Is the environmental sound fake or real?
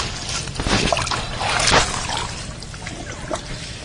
real